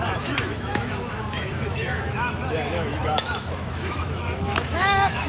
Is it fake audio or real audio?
fake